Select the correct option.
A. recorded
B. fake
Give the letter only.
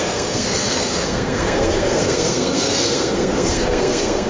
B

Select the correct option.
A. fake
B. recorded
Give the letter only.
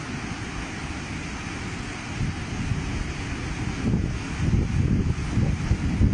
B